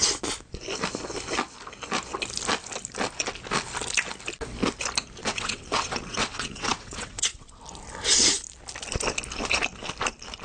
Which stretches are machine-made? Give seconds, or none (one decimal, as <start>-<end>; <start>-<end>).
5.2-7.6